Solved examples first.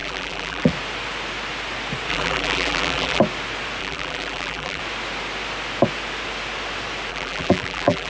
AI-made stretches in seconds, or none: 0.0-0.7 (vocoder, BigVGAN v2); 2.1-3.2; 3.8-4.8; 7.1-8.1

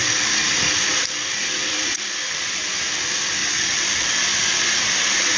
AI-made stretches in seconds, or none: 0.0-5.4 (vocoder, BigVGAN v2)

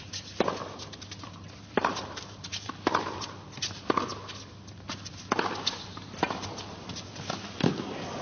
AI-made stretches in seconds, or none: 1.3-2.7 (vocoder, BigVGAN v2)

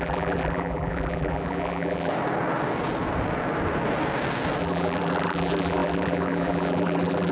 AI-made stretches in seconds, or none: 0.0-2.1 (vocoder, BigVGAN v2); 4.6-7.3

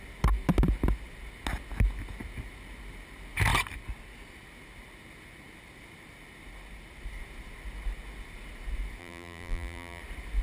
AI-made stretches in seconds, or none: 9.0-10.0 (vocoder, BigVGAN v2)